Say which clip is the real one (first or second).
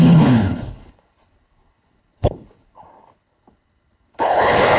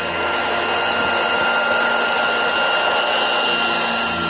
second